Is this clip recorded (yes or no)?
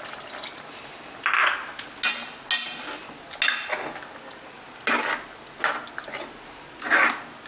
yes